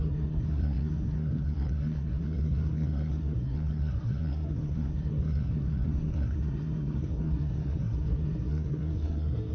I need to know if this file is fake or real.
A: fake